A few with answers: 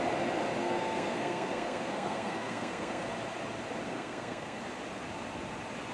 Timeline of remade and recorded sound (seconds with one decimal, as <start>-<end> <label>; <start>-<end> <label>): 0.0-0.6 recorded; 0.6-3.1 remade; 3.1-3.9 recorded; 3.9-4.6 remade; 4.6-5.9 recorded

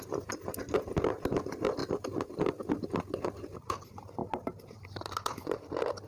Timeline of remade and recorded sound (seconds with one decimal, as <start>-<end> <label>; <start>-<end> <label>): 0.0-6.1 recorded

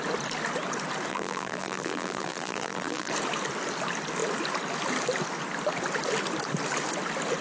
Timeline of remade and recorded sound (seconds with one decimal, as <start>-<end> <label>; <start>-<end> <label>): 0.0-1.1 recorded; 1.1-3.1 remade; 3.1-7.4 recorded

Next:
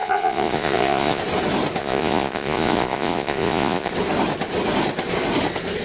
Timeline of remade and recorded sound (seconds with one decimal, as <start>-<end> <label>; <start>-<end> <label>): 0.0-1.2 remade; 1.2-1.8 recorded; 1.8-3.9 remade; 3.9-5.8 recorded

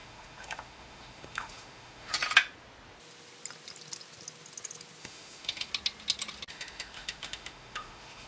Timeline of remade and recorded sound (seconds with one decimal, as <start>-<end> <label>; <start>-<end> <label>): 0.0-2.1 remade; 2.1-5.0 recorded; 5.0-5.7 remade; 5.7-6.5 recorded; 6.5-8.3 remade